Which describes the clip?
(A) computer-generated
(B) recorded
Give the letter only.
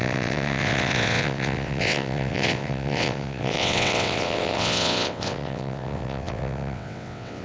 A